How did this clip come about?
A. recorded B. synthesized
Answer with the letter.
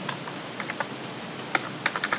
A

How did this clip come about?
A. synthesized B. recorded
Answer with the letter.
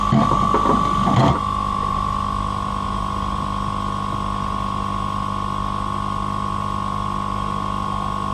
B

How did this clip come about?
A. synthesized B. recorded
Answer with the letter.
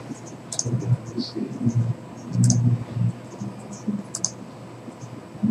B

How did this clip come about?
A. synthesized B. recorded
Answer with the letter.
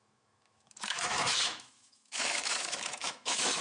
A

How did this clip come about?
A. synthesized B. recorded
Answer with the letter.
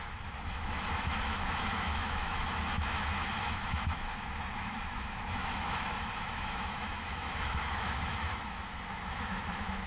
A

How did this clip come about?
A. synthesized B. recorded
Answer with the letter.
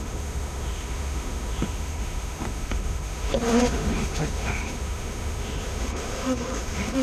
A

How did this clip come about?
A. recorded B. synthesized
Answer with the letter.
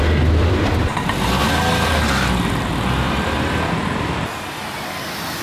A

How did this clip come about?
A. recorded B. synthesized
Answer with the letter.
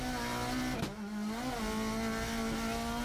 A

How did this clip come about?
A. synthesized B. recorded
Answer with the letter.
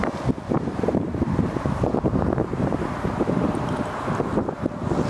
B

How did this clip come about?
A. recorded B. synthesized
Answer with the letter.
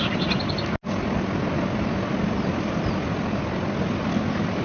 A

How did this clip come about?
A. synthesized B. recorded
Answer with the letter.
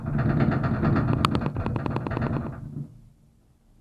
B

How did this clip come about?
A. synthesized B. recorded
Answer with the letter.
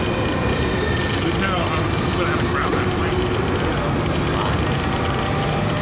B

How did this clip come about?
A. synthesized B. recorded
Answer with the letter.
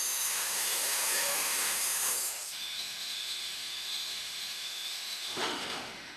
A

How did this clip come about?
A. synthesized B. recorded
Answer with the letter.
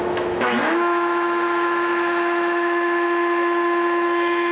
A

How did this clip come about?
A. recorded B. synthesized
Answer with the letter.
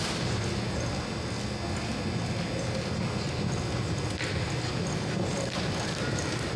A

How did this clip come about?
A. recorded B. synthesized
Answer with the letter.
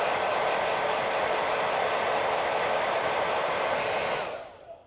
A